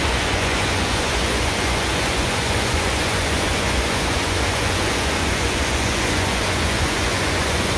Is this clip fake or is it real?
fake